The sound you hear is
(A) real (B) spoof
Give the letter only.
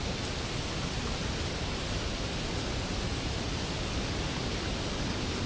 A